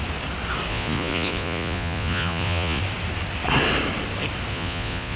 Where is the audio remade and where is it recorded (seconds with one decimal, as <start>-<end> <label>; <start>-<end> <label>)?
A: 0.0-0.7 recorded; 0.7-2.8 remade; 2.8-4.5 recorded; 4.5-5.2 remade